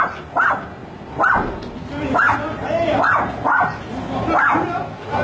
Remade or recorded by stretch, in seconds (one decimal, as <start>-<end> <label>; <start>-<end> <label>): 0.0-0.8 recorded; 0.8-3.8 remade; 3.8-5.2 recorded